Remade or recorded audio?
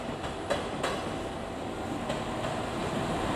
recorded